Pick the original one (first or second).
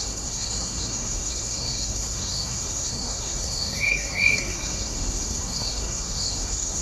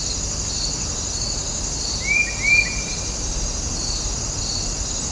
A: second